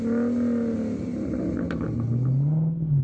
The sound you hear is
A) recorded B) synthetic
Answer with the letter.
A